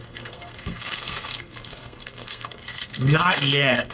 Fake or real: fake